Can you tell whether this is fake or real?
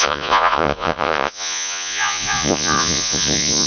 fake